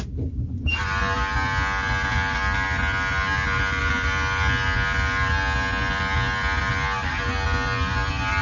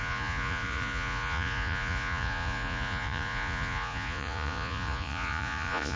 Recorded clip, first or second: first